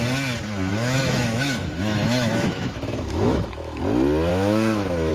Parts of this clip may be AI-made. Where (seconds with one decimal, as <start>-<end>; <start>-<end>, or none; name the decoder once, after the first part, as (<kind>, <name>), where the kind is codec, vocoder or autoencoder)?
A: 0.7-3.8 (autoencoder, DAC-VAE); 4.3-5.1